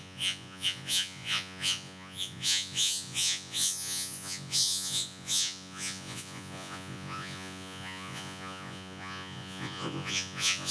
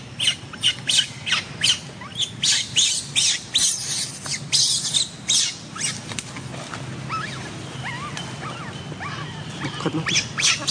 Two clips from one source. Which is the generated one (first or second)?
first